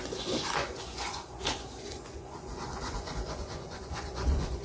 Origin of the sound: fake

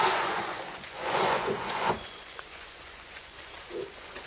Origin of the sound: fake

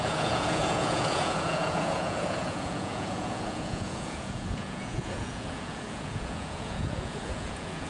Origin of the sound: fake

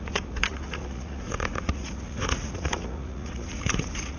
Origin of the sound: fake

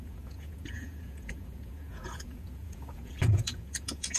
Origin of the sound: fake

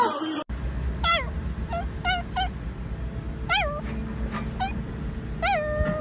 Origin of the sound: real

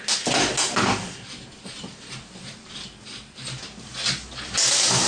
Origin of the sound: real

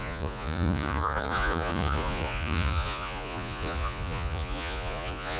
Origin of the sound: fake